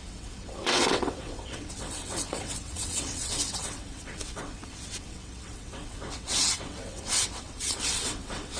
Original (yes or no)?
no